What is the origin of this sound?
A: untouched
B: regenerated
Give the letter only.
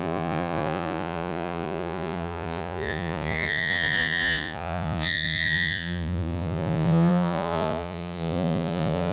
B